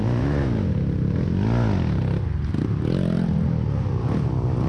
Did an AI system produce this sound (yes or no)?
no